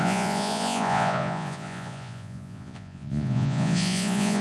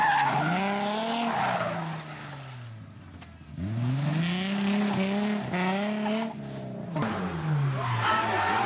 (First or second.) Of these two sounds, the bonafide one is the second